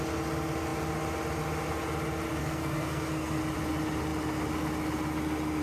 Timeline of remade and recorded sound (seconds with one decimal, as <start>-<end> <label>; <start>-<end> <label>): 0.0-2.4 recorded; 2.4-3.4 remade; 3.4-5.6 recorded